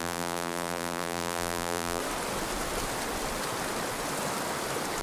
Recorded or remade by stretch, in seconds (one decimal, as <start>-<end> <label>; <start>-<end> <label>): 0.0-2.0 remade; 2.0-5.0 recorded